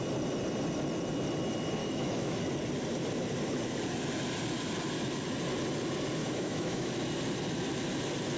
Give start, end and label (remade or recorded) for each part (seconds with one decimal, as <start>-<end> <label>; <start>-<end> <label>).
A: 0.0-1.8 recorded; 1.8-2.4 remade; 2.4-6.2 recorded; 6.2-6.9 remade; 6.9-8.4 recorded